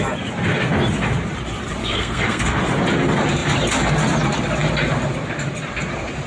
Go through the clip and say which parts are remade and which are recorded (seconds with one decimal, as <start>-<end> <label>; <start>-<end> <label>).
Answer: 0.0-1.8 recorded; 1.8-2.6 remade; 2.6-6.3 recorded